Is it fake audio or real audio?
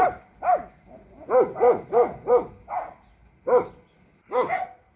real